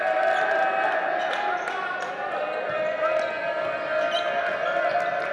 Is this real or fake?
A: real